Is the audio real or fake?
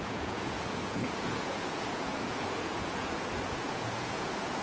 fake